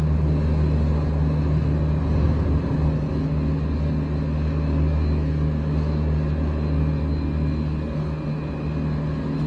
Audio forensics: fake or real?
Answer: real